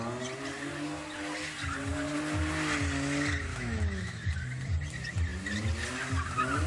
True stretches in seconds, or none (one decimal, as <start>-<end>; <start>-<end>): 0.0-3.5; 4.3-6.7